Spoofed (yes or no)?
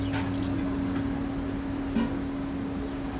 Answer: no